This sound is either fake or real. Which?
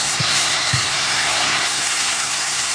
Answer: fake